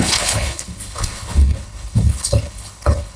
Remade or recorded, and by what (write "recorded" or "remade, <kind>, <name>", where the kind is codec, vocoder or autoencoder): remade, codec, HILCodec